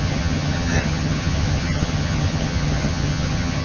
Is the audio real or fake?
fake